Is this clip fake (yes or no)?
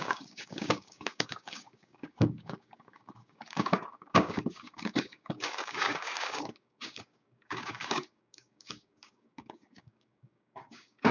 yes